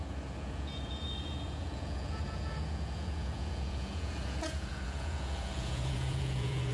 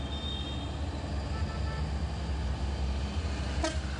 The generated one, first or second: first